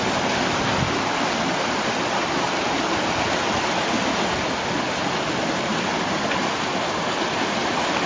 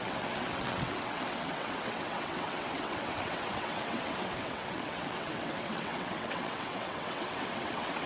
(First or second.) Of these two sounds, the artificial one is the second